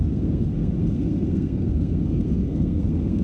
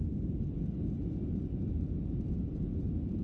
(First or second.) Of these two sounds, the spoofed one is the first